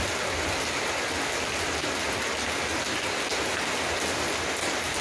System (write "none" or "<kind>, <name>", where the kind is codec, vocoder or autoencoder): none